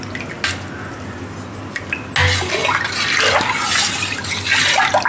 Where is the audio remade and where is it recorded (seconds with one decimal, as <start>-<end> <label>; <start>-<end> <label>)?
0.0-5.1 recorded